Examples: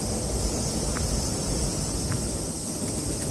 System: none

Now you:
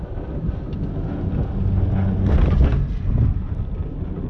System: none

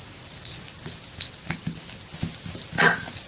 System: none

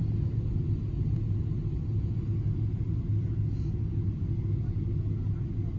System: none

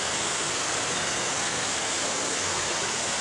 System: codec, SNAC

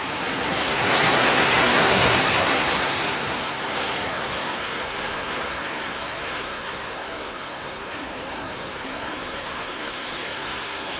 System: codec, SNAC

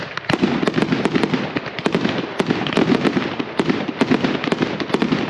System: none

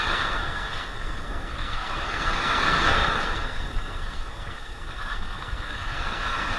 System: codec, SNAC